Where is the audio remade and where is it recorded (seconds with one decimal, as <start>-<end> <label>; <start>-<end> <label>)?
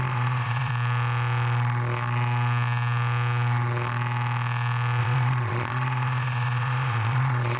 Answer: 0.0-0.7 remade; 0.7-5.0 recorded; 5.0-7.6 remade